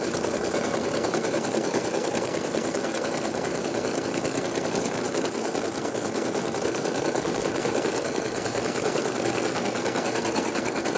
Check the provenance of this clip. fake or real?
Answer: fake